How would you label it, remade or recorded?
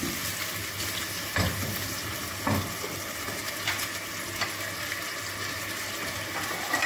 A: recorded